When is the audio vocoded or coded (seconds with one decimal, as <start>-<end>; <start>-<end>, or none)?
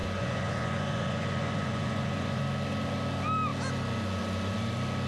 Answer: 0.0-2.4